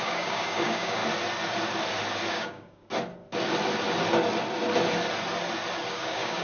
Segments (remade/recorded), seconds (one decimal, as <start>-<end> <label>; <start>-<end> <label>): 0.0-1.0 remade; 1.0-2.3 recorded; 2.3-2.8 remade; 2.8-5.9 recorded; 5.9-6.4 remade